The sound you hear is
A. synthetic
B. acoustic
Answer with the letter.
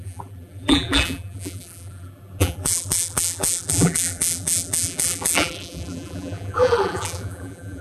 A